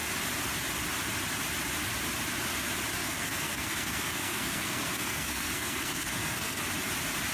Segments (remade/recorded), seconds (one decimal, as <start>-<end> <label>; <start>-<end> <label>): 0.0-3.0 recorded; 3.0-6.6 remade; 6.6-7.3 recorded